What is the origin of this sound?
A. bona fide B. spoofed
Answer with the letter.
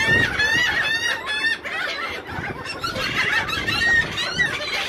A